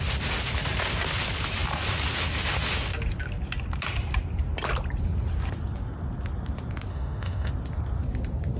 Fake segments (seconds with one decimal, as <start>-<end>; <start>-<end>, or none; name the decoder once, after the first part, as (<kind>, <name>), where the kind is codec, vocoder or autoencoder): 6.9-7.5 (autoencoder, DAC-VAE)